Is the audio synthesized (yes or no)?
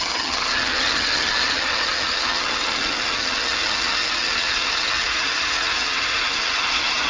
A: yes